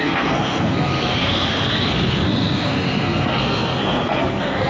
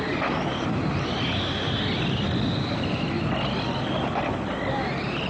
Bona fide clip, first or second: second